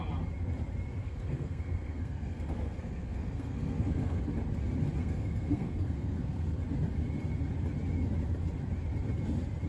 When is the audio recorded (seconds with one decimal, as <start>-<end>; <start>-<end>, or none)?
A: 0.0-1.0; 4.2-5.0; 6.6-9.7